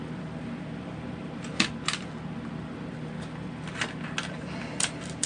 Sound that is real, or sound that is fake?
real